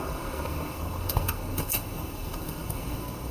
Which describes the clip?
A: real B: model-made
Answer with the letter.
B